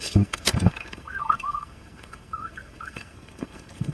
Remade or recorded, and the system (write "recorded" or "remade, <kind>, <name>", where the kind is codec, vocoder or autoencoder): remade, codec, SNAC